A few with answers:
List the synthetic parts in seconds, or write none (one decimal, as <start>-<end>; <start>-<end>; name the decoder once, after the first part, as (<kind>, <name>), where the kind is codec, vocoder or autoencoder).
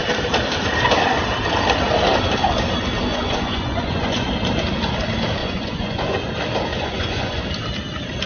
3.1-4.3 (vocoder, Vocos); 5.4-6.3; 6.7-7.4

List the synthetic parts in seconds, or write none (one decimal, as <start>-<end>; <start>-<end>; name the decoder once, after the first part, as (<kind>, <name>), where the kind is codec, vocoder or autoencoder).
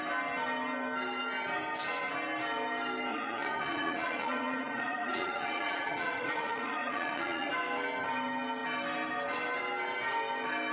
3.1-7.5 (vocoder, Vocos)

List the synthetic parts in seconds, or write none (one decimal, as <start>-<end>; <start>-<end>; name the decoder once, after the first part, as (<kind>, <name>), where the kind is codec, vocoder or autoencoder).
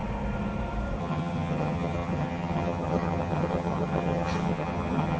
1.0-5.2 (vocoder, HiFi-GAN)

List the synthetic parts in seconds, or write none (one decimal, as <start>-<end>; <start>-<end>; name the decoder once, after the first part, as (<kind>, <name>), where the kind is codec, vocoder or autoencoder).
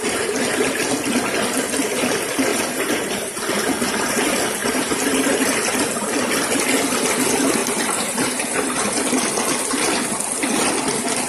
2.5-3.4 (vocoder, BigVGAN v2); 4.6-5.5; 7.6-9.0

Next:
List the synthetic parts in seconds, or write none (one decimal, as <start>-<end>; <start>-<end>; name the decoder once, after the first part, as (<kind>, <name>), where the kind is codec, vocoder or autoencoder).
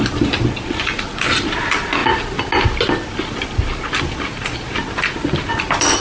none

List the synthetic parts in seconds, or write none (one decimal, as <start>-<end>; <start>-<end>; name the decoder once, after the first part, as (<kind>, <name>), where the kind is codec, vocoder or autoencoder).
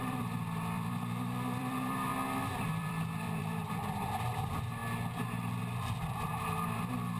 0.0-2.1 (vocoder, BigVGAN v2); 2.7-4.8; 5.6-7.2